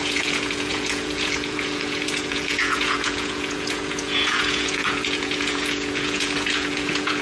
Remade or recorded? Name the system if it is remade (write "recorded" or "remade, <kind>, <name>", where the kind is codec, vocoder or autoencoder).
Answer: remade, vocoder, Vocos